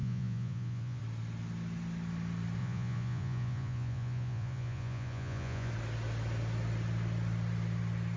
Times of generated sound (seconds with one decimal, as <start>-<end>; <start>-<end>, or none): 0.0-1.0; 2.6-5.7